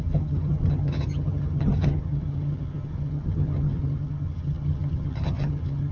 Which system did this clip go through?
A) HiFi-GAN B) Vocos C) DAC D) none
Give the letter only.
A